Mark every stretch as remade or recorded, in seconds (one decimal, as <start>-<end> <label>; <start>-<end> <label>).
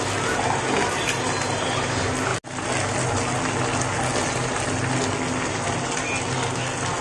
0.0-7.0 recorded